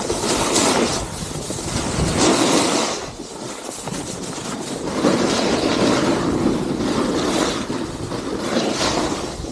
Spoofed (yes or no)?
no